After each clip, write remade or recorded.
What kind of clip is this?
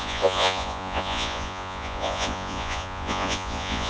remade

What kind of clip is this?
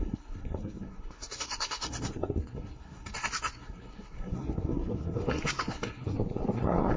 remade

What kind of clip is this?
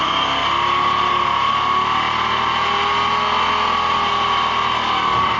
recorded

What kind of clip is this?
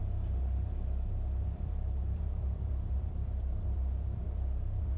remade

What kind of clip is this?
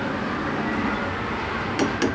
recorded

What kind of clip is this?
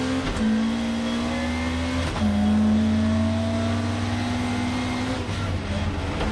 recorded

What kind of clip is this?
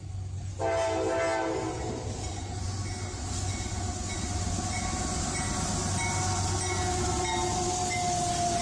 recorded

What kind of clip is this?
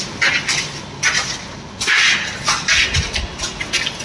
recorded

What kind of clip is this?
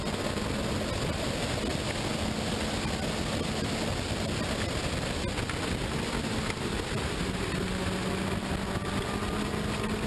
recorded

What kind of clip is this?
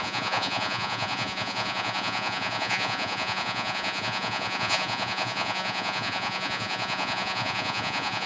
remade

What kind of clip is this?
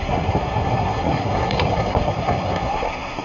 remade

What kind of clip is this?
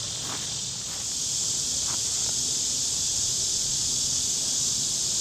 recorded